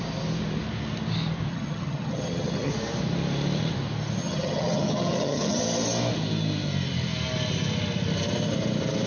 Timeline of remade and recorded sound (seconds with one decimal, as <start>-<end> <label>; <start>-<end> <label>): 0.0-1.5 recorded; 1.5-2.7 remade; 2.7-4.2 recorded; 4.2-5.6 remade; 5.6-9.1 recorded